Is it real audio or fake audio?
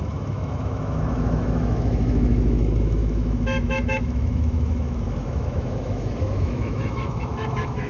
fake